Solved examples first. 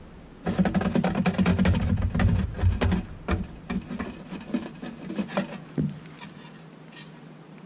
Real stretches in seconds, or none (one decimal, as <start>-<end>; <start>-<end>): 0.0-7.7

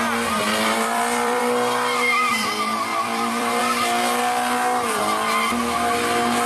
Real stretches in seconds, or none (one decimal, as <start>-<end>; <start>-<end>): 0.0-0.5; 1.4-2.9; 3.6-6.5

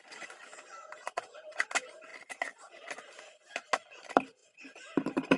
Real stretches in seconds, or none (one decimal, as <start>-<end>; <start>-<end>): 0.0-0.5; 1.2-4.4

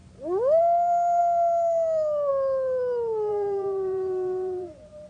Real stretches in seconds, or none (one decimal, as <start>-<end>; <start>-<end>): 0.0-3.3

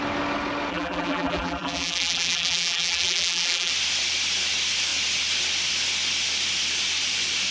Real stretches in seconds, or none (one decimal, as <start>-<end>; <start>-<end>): 0.0-0.7; 3.7-7.5